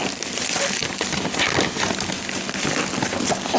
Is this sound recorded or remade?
recorded